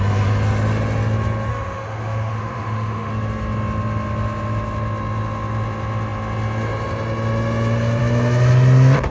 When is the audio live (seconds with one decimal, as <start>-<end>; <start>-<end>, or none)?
0.0-1.5; 3.1-9.1